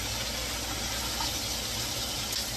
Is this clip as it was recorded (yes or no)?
yes